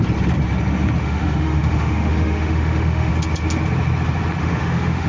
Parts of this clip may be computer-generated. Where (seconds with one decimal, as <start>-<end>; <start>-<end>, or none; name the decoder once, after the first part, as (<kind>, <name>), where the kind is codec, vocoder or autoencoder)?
1.0-3.1 (autoencoder, DAC-VAE); 4.4-5.1